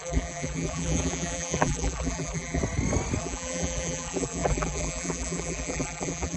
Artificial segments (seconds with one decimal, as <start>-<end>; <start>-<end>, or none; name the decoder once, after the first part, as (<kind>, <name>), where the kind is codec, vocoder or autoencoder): 0.0-2.6 (vocoder, BigVGAN v2); 3.2-6.4